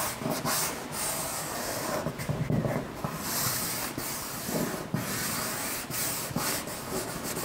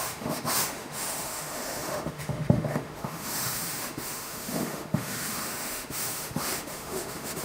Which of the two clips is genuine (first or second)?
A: first